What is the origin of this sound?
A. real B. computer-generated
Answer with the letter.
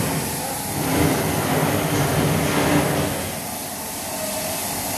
A